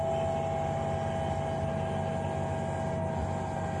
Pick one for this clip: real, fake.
real